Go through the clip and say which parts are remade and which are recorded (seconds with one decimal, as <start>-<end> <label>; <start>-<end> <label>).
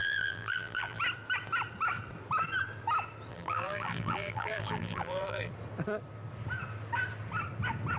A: 0.0-1.0 remade; 1.0-3.3 recorded; 3.3-5.5 remade; 5.5-8.0 recorded